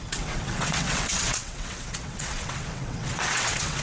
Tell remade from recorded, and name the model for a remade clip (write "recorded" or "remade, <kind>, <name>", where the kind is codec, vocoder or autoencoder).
remade, vocoder, WaveNeXt